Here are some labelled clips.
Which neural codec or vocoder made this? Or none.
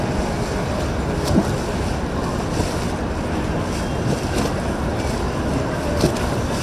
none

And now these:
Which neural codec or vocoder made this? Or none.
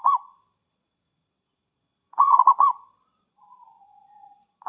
vocoder, Vocos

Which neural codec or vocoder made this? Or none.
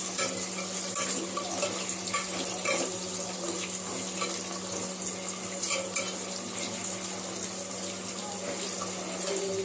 none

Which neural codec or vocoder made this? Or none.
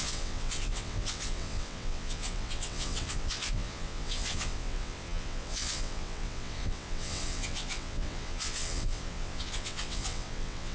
vocoder, WaveNeXt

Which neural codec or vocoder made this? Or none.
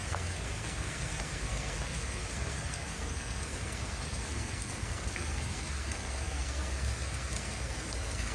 codec, SNAC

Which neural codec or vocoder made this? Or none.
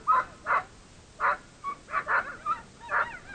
none